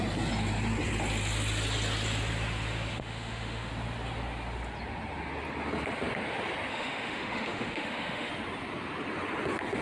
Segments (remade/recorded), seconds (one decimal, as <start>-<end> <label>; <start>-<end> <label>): 0.0-2.9 recorded; 2.9-3.7 remade; 3.7-6.7 recorded; 6.7-8.3 remade; 8.3-9.8 recorded